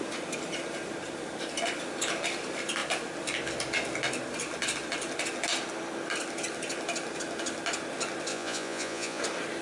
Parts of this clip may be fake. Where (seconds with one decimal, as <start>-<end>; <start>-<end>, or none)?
8.3-9.2